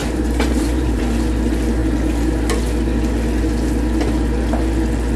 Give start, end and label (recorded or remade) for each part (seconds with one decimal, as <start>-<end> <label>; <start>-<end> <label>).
0.0-1.0 remade; 1.0-5.2 recorded